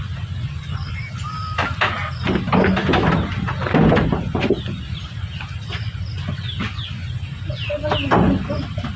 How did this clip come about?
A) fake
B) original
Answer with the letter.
B